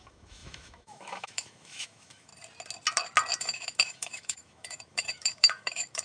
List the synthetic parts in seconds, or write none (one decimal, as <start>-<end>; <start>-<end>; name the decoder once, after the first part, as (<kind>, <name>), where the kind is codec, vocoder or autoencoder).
0.0-2.3 (autoencoder, DAC-VAE); 3.4-6.0